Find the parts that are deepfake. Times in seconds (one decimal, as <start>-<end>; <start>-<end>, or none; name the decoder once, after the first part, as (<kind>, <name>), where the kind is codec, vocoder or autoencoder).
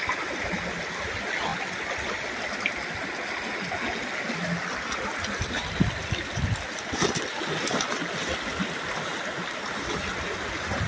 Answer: none